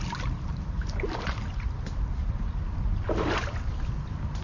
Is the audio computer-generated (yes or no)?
no